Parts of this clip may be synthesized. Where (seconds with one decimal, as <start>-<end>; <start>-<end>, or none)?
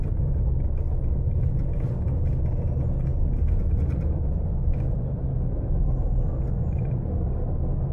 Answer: none